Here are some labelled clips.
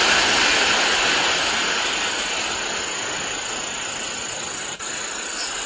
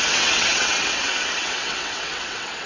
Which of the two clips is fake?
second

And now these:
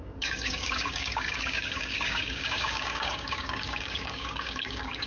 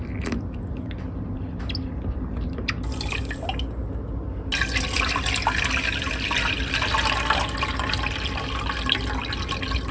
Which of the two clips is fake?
first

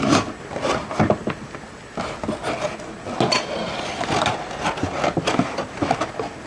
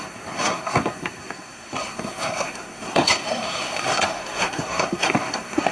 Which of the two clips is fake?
second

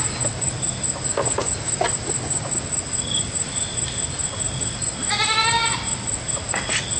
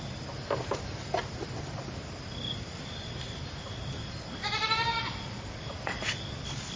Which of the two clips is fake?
second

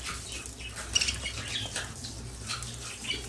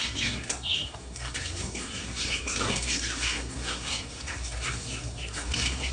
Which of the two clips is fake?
second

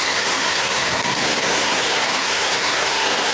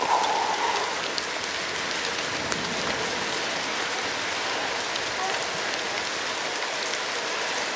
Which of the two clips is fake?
first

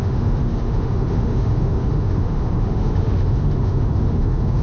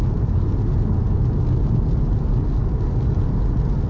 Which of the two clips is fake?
first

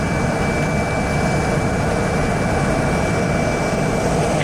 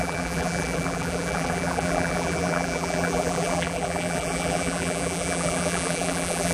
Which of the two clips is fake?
second